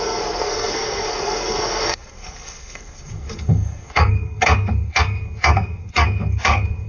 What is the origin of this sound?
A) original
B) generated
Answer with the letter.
B